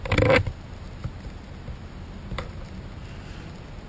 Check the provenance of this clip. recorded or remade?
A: recorded